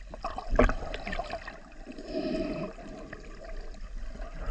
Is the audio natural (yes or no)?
yes